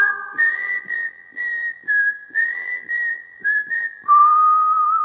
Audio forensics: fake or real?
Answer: fake